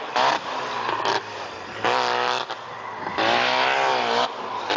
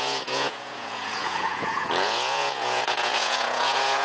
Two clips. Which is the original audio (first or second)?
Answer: first